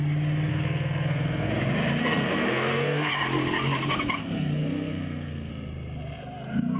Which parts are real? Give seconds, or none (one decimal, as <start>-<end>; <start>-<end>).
0.0-0.5; 1.5-2.0; 3.1-4.2; 5.5-6.8